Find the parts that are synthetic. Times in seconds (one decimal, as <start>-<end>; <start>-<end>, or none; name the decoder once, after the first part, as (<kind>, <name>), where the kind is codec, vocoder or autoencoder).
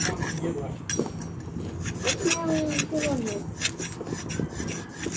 none